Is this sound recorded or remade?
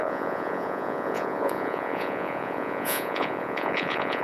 remade